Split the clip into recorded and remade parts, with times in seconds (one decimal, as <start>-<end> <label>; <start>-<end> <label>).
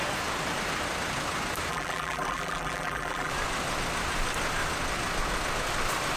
0.0-1.7 recorded; 1.7-3.3 remade; 3.3-6.2 recorded